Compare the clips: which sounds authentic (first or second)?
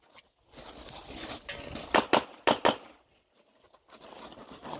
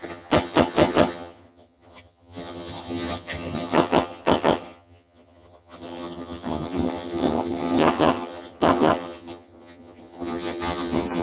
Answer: first